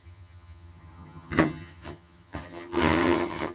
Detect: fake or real fake